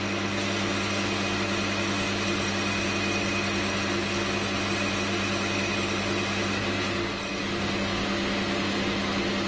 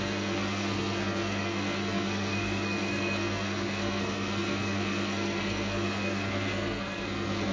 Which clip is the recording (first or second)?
first